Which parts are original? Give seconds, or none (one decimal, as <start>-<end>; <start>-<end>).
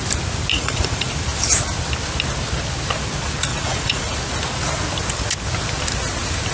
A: 0.0-0.5; 1.1-3.5; 4.2-6.5